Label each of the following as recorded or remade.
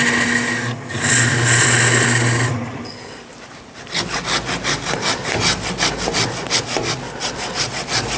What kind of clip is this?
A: recorded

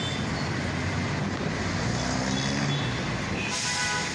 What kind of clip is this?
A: recorded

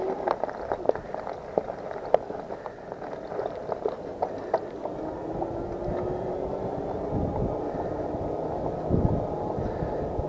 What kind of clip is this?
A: recorded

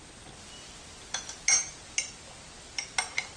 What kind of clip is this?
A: recorded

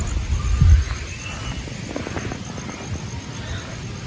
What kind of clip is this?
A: recorded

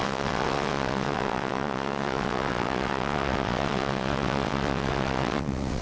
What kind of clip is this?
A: remade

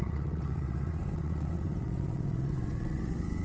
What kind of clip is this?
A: remade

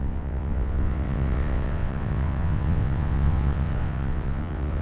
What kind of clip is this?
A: remade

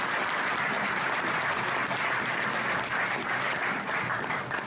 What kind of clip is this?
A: recorded